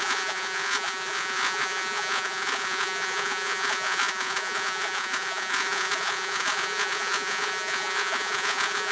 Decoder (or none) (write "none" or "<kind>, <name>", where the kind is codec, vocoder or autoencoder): vocoder, Vocos